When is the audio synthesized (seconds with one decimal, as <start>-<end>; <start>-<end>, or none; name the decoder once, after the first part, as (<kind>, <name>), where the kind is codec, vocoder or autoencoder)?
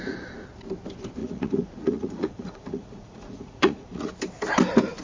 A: 1.2-4.1 (vocoder, Vocos)